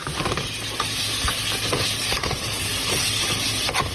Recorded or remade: recorded